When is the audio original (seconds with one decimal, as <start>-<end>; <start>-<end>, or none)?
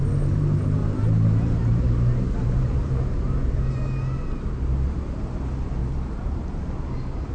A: 0.0-0.8; 3.7-5.8; 6.7-7.3